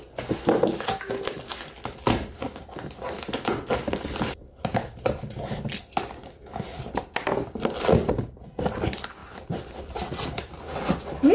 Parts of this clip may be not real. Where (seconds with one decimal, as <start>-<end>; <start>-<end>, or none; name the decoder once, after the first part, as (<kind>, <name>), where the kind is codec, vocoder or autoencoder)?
none

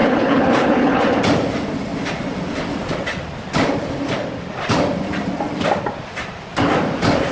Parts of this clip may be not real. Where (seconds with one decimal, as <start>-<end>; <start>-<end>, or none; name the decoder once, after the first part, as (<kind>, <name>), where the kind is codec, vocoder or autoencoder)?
0.0-1.0 (codec, HILCodec)

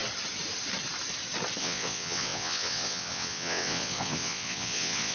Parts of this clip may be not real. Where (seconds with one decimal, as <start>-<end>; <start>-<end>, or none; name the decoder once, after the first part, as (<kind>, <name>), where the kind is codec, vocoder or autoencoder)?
1.6-5.1 (vocoder, WaveNeXt)

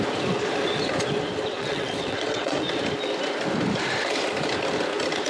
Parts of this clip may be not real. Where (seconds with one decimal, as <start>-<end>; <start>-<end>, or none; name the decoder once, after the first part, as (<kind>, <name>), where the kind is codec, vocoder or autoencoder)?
1.5-2.6 (vocoder, WaveNeXt)

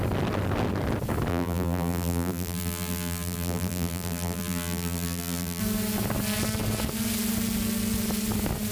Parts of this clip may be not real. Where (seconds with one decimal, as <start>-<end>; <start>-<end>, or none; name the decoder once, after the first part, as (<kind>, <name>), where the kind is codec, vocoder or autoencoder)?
1.3-5.6 (vocoder, BigVGAN v2)

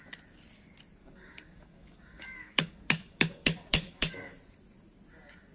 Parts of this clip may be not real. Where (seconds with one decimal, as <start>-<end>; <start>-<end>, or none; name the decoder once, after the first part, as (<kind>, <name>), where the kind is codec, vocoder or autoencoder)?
1.0-4.3 (codec, DAC)

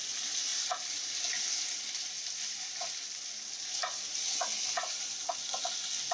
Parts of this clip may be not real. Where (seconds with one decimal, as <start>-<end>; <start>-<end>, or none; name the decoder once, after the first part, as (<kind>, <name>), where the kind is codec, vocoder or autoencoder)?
none

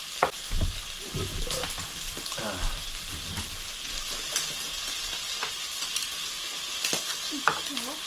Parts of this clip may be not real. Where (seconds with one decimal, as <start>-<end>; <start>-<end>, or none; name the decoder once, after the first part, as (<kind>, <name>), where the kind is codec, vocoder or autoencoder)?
none